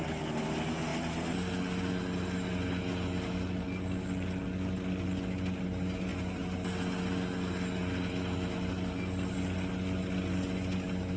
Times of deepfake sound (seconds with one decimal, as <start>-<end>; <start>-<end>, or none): none